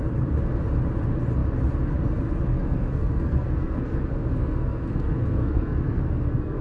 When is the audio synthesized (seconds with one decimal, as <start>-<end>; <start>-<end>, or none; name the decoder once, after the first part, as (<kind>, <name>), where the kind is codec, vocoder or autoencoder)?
2.5-6.6 (codec, SNAC)